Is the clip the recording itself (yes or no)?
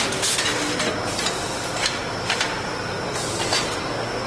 yes